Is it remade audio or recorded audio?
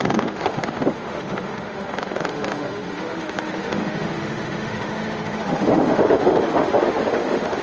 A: remade